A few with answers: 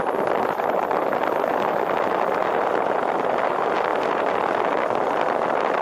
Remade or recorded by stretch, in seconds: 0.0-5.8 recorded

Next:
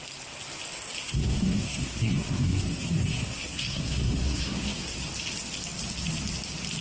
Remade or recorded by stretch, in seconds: 0.0-1.0 recorded; 1.0-5.1 remade; 5.1-6.8 recorded

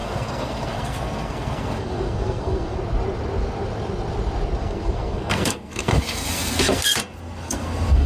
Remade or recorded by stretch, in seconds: 0.0-2.8 remade; 2.8-4.6 recorded; 4.6-8.1 remade